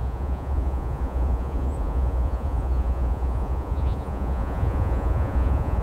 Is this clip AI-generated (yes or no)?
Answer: yes